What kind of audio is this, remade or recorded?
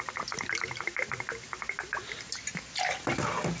recorded